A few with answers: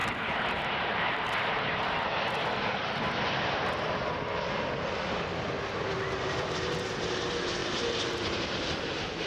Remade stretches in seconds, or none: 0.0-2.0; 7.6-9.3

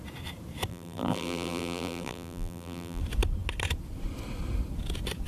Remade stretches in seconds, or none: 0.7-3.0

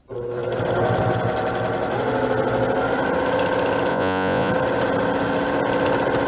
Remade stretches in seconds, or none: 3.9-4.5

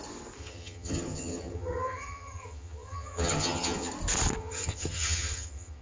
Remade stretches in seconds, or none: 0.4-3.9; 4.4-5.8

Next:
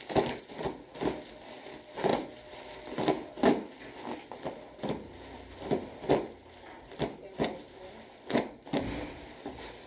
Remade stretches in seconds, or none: none

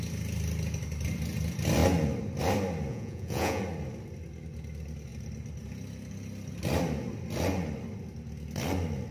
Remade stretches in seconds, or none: 2.9-3.6

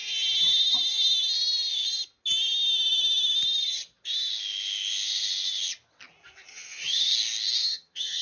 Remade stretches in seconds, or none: 6.5-7.1; 7.6-8.2